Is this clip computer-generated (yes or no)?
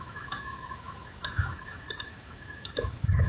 yes